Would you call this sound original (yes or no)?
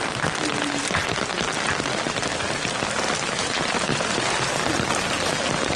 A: yes